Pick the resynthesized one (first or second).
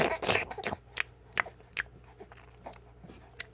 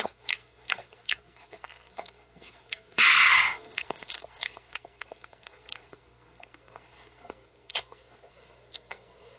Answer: second